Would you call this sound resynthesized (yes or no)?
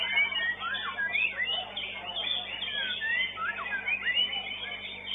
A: no